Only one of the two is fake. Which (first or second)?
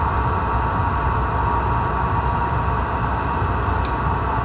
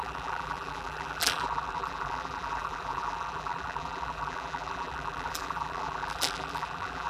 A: second